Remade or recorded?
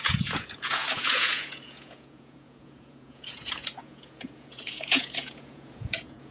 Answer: remade